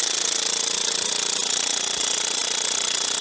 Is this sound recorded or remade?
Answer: recorded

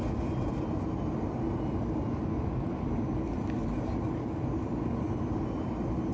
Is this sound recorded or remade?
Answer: recorded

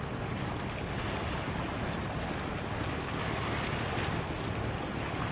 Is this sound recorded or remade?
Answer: recorded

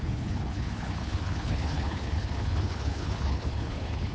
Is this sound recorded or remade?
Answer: remade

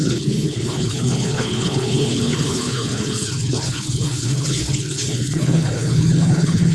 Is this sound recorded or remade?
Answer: remade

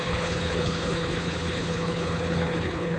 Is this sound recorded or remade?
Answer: remade